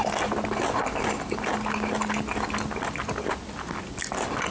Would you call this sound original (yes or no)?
yes